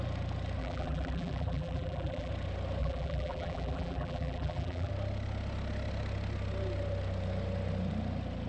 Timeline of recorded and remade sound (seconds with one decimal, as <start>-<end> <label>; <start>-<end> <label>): 0.0-0.6 recorded; 0.6-2.3 remade; 2.3-2.8 recorded; 2.8-4.9 remade; 4.9-8.5 recorded